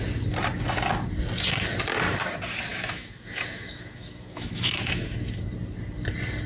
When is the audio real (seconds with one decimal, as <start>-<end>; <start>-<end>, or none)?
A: 0.0-2.7; 5.3-6.5